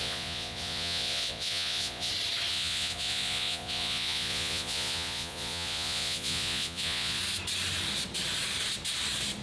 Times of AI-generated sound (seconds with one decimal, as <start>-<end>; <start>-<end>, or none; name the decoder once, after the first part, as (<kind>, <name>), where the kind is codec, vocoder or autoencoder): 0.0-2.1 (vocoder, Vocos); 2.5-7.2